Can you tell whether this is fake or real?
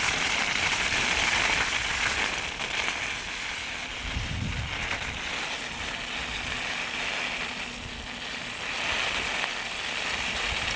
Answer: real